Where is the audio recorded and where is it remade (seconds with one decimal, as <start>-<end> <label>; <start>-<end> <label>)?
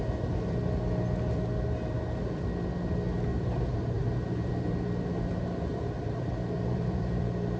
0.0-3.3 recorded; 3.3-4.5 remade; 4.5-5.7 recorded; 5.7-7.6 remade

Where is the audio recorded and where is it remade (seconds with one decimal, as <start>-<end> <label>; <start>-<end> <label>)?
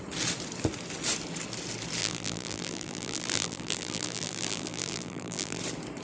0.0-2.0 recorded; 2.0-5.6 remade; 5.6-6.0 recorded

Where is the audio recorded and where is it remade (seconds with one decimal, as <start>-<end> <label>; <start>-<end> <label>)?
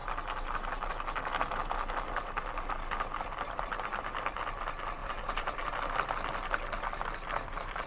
0.0-5.0 recorded; 5.0-5.7 remade; 5.7-7.9 recorded